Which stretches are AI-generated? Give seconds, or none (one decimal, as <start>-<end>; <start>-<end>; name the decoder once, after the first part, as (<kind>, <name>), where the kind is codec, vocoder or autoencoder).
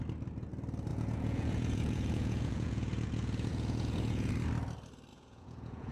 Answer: 0.9-4.3 (vocoder, Vocos); 5.1-5.9